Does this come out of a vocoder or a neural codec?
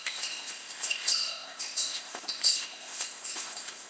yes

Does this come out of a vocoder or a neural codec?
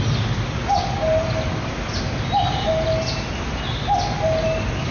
no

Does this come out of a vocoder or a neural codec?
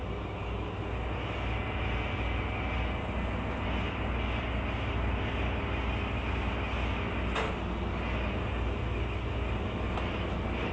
no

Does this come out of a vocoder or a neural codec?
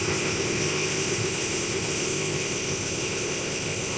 yes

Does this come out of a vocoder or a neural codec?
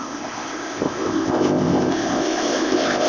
yes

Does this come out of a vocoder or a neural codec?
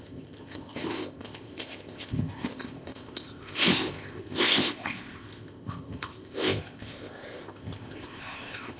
yes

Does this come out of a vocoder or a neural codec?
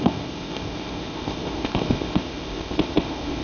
yes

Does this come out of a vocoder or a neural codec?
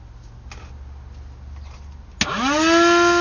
no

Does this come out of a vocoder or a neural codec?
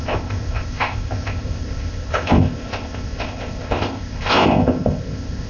yes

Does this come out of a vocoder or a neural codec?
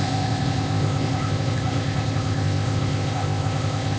yes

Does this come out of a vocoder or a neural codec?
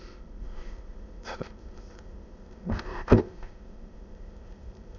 yes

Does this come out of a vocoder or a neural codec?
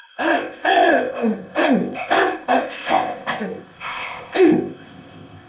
yes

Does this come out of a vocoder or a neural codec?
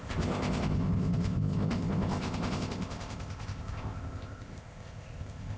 yes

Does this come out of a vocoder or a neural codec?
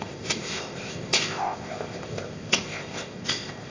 yes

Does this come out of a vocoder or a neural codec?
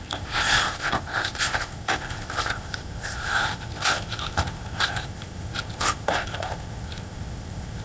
yes